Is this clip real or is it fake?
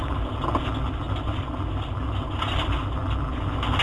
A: real